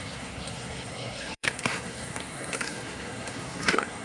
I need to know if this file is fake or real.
fake